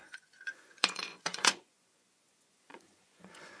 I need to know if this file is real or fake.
fake